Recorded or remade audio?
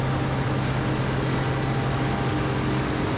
recorded